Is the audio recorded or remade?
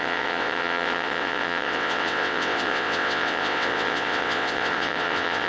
remade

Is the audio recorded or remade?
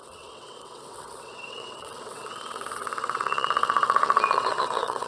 remade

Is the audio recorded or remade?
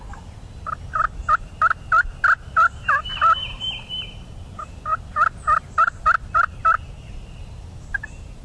recorded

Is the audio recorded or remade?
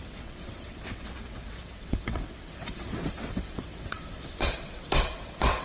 remade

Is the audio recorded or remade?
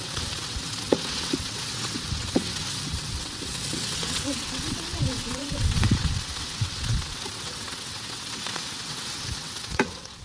remade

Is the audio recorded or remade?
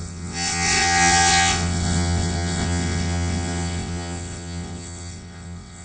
remade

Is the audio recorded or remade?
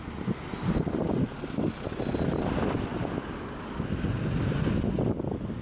recorded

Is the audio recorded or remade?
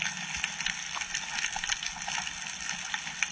recorded